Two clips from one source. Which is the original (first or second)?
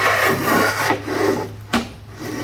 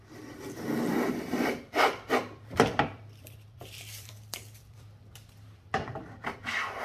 first